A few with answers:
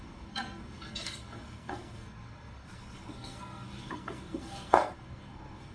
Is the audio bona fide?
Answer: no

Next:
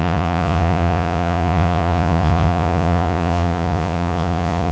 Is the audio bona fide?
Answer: no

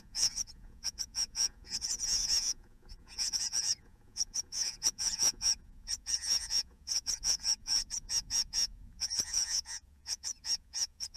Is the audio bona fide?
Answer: no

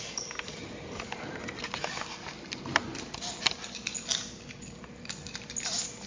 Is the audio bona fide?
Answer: yes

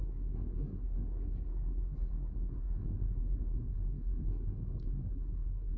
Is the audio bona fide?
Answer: no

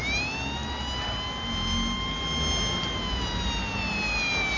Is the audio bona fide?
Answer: yes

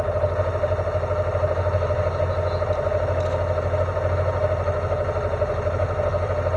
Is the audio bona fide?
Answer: yes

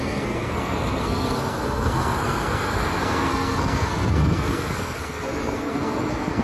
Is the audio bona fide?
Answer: no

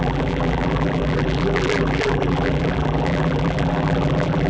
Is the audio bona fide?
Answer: no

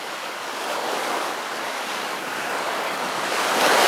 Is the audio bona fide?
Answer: no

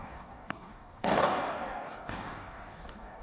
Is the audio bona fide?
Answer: no